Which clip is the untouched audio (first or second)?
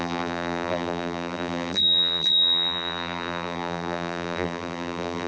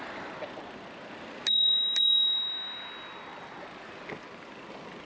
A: second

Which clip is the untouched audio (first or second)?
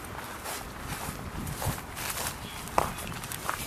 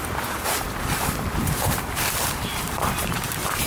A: first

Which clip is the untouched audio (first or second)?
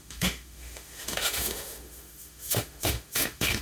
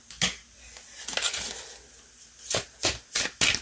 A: second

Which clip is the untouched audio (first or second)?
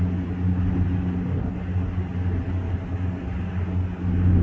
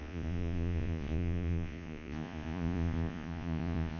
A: first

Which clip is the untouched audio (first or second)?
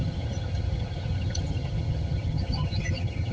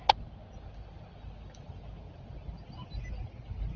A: second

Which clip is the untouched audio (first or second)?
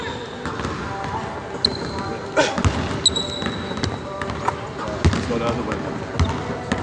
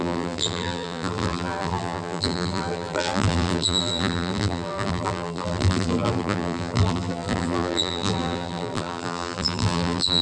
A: first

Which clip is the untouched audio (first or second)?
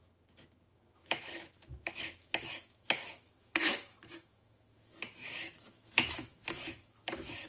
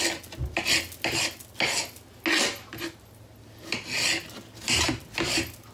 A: second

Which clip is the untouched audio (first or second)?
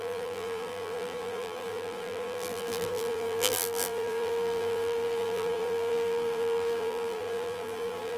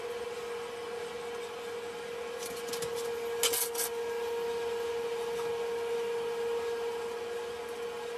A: second